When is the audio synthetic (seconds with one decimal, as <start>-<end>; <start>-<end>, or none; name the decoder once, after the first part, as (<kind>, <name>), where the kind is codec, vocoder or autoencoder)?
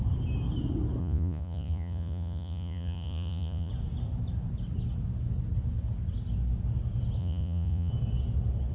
1.0-3.7 (vocoder, Vocos); 7.2-7.9